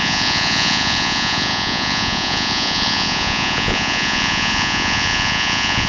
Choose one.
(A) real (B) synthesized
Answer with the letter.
B